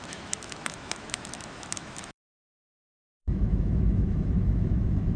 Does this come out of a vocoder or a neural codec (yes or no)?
yes